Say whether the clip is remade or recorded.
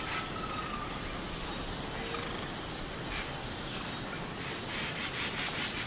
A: recorded